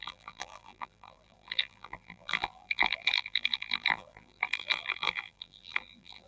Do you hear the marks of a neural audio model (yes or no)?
yes